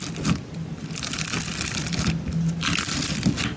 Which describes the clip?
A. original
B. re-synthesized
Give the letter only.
A